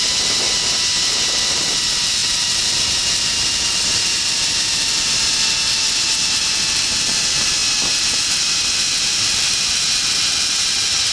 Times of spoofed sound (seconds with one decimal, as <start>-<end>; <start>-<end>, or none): none